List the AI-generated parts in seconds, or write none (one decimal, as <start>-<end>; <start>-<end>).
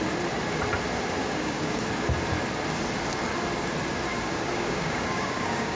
1.2-1.8; 4.1-5.8